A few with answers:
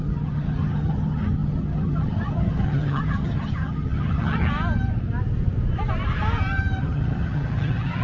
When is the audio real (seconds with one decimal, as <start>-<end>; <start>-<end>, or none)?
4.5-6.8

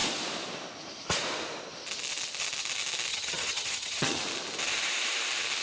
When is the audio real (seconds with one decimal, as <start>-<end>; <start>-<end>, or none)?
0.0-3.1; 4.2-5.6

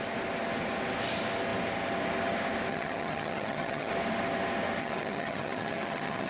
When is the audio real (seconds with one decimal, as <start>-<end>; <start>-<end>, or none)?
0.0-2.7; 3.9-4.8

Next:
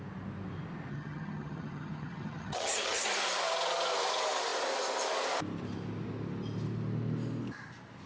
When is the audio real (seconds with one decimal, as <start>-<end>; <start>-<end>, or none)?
0.0-0.9; 3.1-8.1

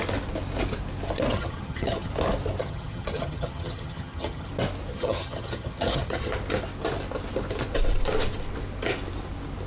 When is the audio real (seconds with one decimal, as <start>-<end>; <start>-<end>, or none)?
0.0-1.3; 2.1-2.6; 4.5-4.9; 6.3-9.7

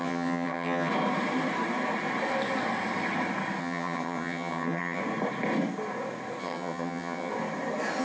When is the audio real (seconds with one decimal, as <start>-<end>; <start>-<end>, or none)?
0.9-3.6; 5.0-6.4; 7.3-8.0

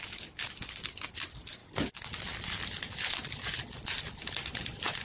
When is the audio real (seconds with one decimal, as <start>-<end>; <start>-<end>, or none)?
0.0-5.0